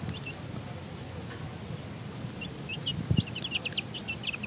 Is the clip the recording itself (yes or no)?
yes